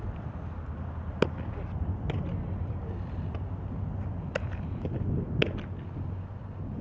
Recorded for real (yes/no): yes